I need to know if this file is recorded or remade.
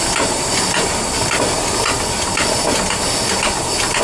recorded